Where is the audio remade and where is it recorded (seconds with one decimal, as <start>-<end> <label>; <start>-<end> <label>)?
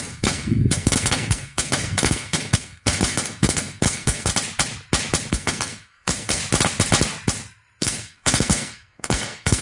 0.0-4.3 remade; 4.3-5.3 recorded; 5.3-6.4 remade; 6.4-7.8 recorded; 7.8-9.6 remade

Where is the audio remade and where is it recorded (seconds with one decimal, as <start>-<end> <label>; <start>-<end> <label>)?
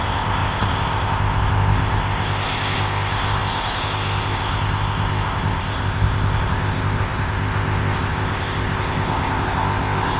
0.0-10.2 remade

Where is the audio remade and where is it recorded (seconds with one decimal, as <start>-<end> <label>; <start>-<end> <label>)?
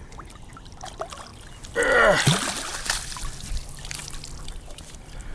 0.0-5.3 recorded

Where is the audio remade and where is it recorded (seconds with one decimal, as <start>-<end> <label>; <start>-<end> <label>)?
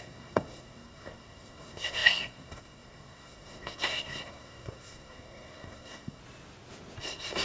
0.0-6.2 remade; 6.2-7.0 recorded; 7.0-7.4 remade